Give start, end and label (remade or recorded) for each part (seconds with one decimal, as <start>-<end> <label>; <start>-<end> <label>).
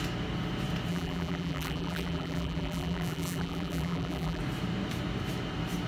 0.0-0.9 recorded; 0.9-4.4 remade; 4.4-5.9 recorded